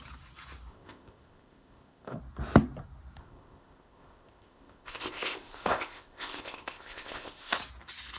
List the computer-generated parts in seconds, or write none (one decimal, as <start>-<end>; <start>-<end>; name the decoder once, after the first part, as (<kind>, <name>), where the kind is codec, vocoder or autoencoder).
0.7-2.2 (codec, ZipCodec); 3.2-7.6